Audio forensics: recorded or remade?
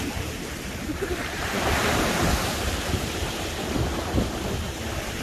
remade